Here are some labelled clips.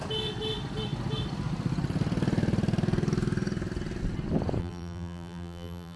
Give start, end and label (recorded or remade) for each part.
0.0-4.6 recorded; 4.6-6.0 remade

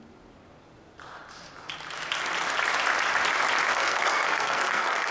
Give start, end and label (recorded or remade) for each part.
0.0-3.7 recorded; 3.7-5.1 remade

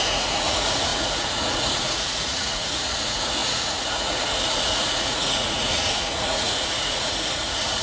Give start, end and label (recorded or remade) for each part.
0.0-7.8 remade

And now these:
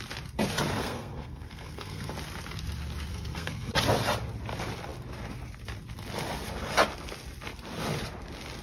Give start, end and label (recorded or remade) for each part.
0.0-0.8 recorded; 0.8-2.1 remade; 2.1-3.1 recorded; 3.1-3.7 remade; 3.7-8.6 recorded